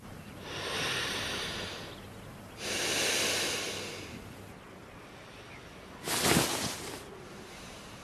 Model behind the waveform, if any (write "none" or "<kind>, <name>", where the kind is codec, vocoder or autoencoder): none